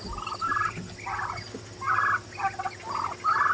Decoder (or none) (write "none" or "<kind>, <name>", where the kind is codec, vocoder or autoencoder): none